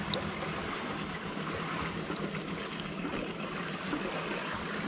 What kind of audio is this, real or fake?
real